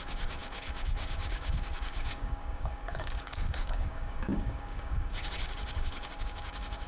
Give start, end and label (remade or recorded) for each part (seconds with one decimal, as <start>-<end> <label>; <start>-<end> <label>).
0.0-6.9 remade